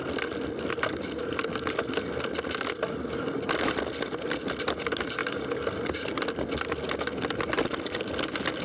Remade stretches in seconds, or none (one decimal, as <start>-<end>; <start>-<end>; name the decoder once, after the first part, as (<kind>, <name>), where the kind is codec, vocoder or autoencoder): none